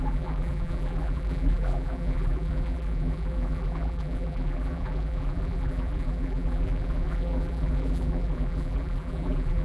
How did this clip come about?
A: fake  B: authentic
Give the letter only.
A